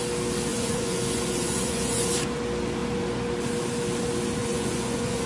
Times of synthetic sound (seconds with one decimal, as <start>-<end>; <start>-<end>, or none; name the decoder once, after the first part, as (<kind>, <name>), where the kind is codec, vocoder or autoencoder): 0.5-2.1 (vocoder, Vocos); 4.4-5.3